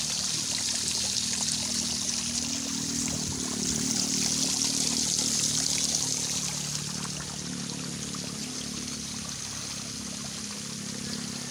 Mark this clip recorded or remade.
recorded